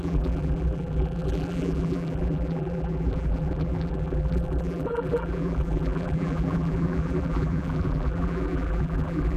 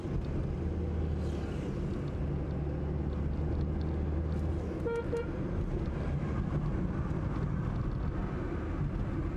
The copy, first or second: first